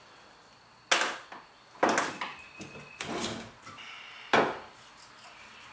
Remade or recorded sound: recorded